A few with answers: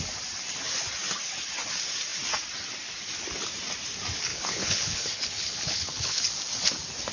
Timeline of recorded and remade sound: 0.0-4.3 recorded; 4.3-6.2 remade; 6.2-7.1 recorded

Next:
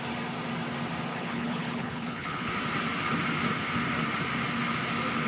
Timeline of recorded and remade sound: 0.0-1.1 recorded; 1.1-2.5 remade; 2.5-5.3 recorded

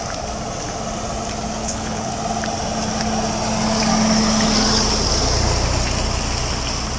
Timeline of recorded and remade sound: 0.0-1.6 recorded; 1.6-2.1 remade; 2.1-7.0 recorded

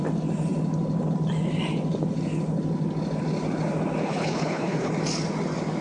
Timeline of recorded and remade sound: 0.0-4.0 recorded; 4.0-4.9 remade; 4.9-5.8 recorded

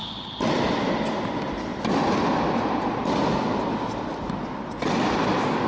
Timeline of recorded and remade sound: 0.0-5.7 recorded

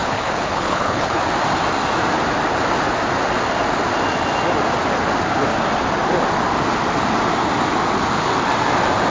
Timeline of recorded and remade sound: 0.0-1.2 remade; 1.2-9.1 recorded

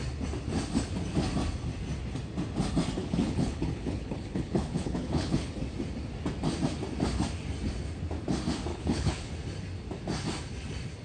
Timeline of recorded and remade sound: 0.0-3.0 recorded; 3.0-5.5 remade; 5.5-8.7 recorded; 8.7-9.3 remade; 9.3-11.0 recorded

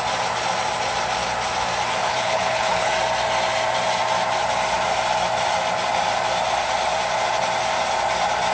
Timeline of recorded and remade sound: 0.0-2.0 recorded; 2.0-2.9 remade; 2.9-8.5 recorded